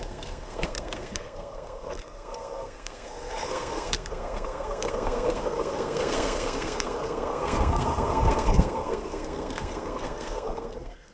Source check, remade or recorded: remade